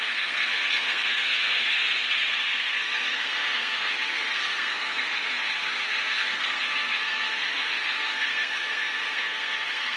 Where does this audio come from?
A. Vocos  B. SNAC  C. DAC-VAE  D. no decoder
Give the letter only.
B